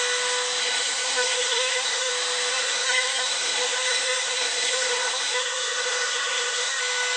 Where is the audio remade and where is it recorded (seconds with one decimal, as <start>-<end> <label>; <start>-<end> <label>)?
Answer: 0.0-0.6 recorded; 0.6-2.1 remade; 2.1-2.5 recorded; 2.5-6.8 remade; 6.8-7.2 recorded